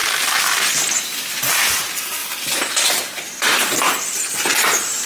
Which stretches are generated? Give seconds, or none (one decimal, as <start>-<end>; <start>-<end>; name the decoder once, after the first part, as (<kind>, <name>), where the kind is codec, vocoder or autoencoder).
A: 2.2-5.1 (vocoder, BigVGAN v2)